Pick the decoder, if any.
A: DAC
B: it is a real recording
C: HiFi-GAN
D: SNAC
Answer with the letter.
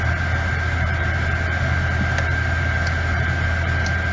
B